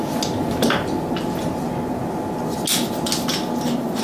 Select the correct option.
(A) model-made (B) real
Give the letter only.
B